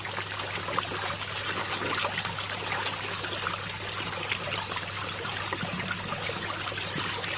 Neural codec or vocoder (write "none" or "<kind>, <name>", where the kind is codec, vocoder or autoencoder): none